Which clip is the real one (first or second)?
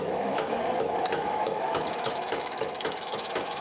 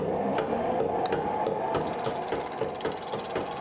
second